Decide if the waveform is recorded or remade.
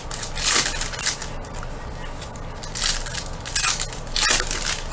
recorded